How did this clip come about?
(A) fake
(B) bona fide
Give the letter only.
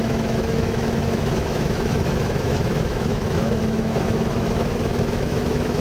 A